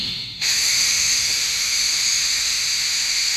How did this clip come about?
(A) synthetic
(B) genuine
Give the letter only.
A